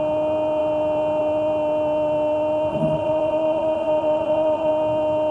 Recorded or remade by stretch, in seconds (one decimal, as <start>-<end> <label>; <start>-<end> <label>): 0.0-2.7 recorded; 2.7-4.7 remade; 4.7-5.3 recorded